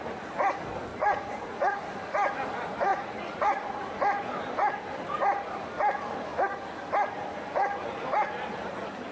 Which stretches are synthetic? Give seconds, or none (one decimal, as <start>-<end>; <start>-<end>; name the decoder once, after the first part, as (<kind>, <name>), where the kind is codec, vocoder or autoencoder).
0.9-1.7 (vocoder, Vocos); 2.9-3.9